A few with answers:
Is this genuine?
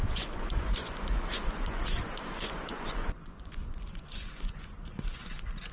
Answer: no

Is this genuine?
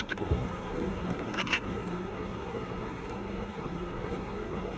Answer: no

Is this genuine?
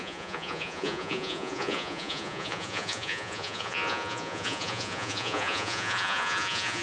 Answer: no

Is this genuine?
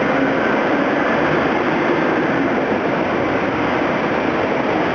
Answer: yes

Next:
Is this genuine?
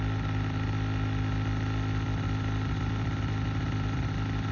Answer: yes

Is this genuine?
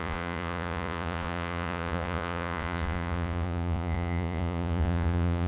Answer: no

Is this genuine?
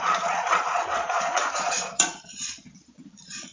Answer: no